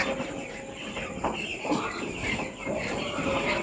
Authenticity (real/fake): real